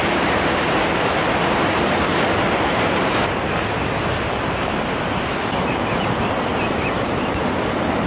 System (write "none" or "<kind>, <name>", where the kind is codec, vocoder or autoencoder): none